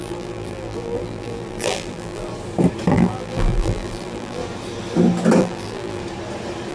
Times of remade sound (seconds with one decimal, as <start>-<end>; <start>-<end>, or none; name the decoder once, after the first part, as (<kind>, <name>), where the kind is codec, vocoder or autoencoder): 0.0-2.3 (vocoder, BigVGAN v2); 2.9-4.4; 5.4-6.0